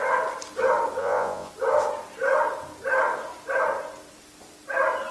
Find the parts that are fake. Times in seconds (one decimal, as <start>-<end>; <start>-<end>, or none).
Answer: 1.0-1.5

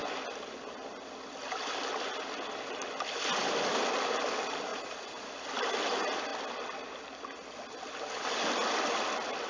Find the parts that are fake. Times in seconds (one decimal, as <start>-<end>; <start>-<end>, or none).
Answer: 4.7-5.3

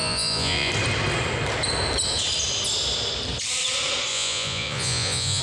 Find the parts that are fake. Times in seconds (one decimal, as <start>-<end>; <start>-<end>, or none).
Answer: 0.0-0.7; 4.1-5.4

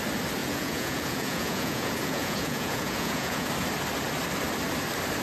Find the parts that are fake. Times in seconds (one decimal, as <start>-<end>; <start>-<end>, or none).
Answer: 0.4-3.5